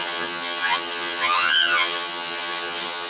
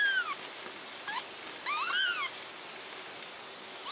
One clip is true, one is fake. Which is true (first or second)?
second